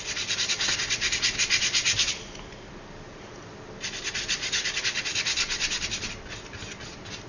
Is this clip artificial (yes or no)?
no